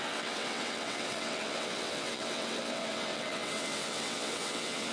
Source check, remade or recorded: remade